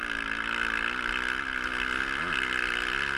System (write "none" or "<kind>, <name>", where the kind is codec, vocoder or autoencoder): none